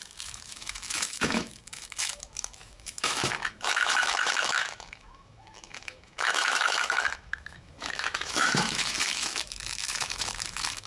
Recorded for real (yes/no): no